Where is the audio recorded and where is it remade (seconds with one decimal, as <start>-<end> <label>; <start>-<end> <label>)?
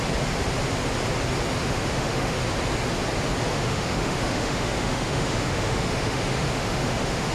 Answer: 0.0-1.6 recorded; 1.6-2.4 remade; 2.4-3.5 recorded; 3.5-7.3 remade